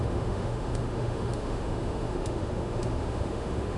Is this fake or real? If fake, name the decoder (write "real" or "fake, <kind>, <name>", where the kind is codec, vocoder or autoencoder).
fake, autoencoder, DAC-VAE